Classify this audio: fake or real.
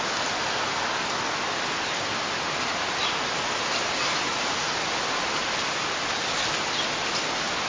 real